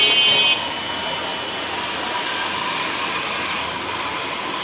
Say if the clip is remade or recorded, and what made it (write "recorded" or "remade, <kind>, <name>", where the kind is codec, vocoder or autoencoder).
recorded